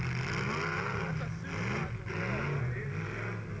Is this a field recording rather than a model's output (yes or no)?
yes